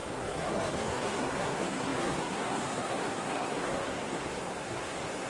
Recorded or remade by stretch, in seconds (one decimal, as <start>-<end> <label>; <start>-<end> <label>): 0.0-5.3 remade